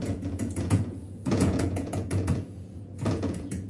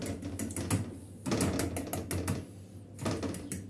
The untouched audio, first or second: second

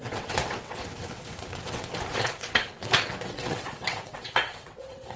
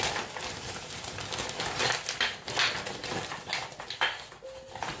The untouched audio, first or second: second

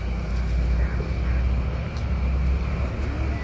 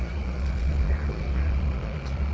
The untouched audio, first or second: first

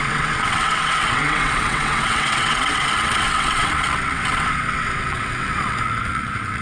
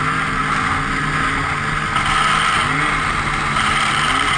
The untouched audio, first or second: second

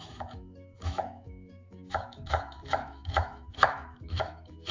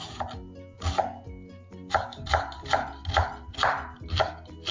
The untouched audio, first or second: second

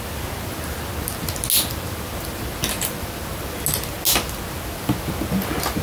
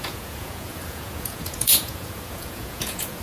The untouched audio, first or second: first